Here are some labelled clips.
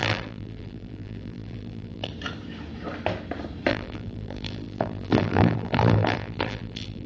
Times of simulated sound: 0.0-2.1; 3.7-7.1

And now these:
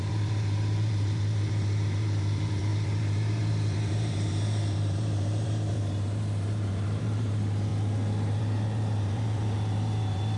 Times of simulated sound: 0.0-7.7; 8.4-10.4

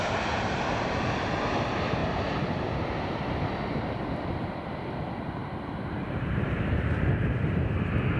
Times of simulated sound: 5.4-7.5

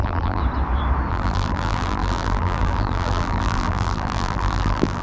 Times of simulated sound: 0.0-0.4; 1.1-5.0

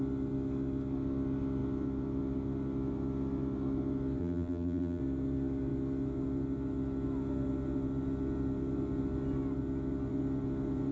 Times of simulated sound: 4.2-5.0

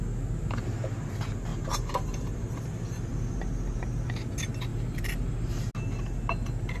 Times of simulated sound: 1.5-4.1; 4.7-5.7

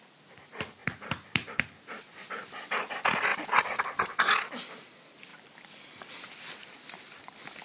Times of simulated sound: 0.8-1.6; 3.3-3.8